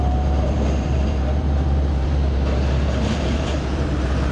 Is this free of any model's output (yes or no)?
no